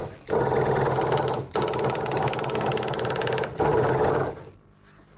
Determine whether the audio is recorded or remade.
recorded